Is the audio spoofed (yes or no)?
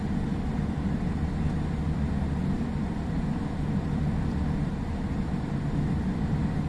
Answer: yes